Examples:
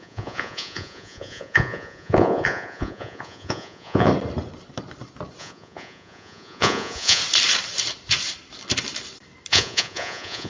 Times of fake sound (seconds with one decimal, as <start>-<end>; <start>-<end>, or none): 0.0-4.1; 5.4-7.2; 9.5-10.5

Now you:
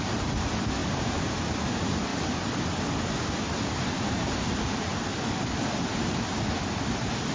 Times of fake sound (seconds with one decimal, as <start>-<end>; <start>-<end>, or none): 0.0-2.1; 4.0-4.9

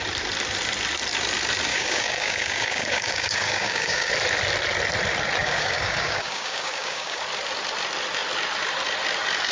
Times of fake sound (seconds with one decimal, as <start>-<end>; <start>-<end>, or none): 1.7-4.1; 5.4-7.2